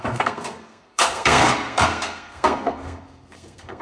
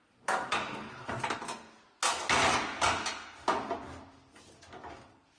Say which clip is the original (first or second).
second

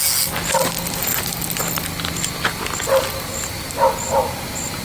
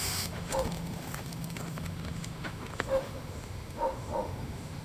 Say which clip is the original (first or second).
first